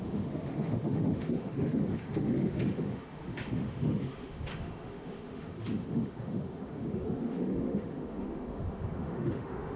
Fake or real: fake